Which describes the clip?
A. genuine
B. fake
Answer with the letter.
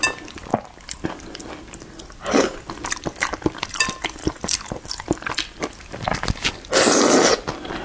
A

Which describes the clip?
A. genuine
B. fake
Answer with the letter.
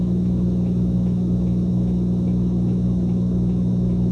B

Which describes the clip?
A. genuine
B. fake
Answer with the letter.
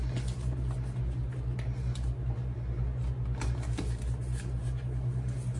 A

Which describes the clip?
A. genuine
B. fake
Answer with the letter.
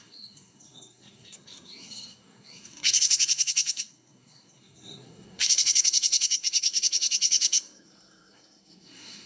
B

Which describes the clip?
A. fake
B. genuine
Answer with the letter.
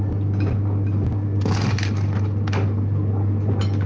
B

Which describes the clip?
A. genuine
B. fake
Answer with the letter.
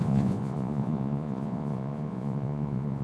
B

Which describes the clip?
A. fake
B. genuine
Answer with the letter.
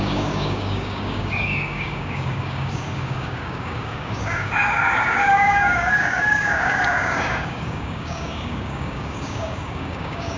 A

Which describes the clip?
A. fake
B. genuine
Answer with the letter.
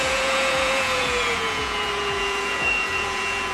A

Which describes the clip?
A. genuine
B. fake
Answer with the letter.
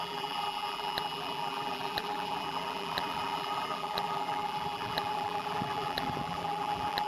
B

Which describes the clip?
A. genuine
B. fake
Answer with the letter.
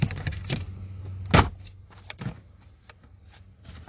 A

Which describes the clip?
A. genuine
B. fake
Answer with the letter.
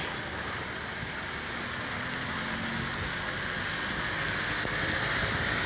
A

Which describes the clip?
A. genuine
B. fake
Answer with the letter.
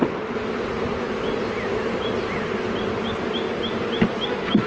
A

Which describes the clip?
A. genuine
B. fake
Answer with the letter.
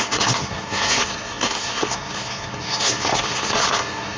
B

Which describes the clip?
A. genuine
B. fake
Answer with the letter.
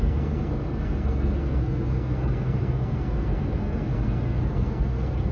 B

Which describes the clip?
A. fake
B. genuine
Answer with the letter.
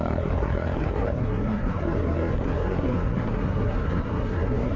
A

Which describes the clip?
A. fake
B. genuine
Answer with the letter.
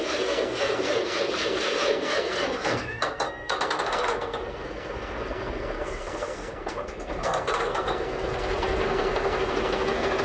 A